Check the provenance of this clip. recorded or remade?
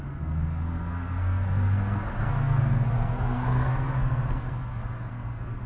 remade